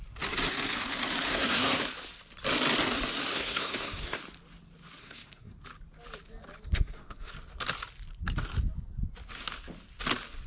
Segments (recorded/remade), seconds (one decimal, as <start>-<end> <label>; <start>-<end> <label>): 0.0-1.3 recorded; 1.3-1.8 remade; 1.8-3.3 recorded; 3.3-4.2 remade; 4.2-5.0 recorded; 5.0-5.5 remade; 5.5-6.7 recorded; 6.7-7.3 remade; 7.3-10.5 recorded